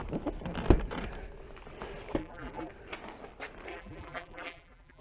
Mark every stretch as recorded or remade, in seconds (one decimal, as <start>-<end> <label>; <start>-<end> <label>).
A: 0.0-2.2 recorded; 2.2-2.7 remade; 2.7-3.7 recorded; 3.7-5.0 remade